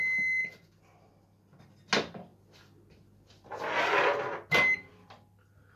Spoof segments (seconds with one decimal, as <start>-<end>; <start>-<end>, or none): none